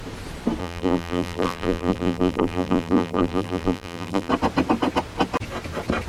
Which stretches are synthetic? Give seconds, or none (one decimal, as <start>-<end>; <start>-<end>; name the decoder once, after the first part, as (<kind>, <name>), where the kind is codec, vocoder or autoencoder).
0.6-4.3 (vocoder, BigVGAN v2)